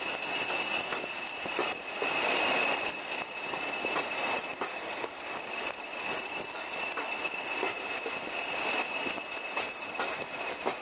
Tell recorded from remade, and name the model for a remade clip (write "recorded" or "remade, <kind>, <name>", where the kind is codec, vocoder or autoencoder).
recorded